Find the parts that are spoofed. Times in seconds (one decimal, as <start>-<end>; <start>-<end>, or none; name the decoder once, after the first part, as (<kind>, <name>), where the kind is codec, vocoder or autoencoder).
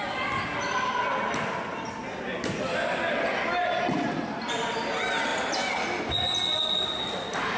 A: none